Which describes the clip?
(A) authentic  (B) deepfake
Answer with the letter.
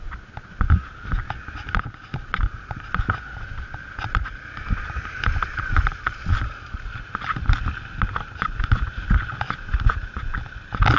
A